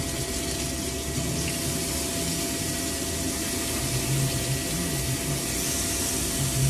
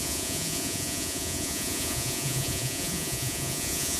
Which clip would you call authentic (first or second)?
first